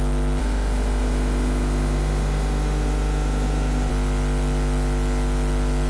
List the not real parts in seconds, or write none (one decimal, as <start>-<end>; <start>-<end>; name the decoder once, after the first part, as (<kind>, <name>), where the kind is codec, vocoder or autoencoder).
0.4-3.9 (autoencoder, DAC-VAE)